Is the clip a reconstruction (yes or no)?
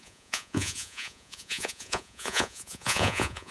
yes